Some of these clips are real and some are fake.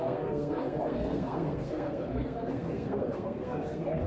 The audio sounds fake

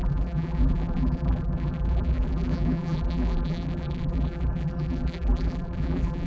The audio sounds fake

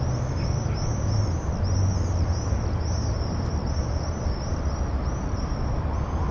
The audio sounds real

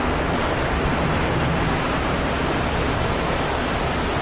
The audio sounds real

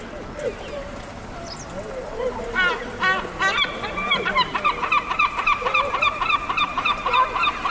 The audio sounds real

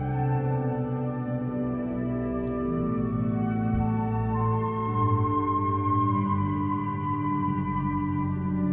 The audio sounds real